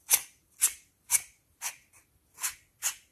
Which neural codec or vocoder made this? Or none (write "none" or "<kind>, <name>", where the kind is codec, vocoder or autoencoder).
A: none